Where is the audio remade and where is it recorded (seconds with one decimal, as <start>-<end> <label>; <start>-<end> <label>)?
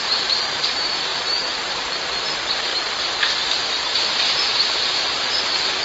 0.0-2.7 remade; 2.7-4.1 recorded; 4.1-5.8 remade